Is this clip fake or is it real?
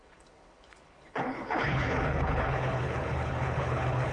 fake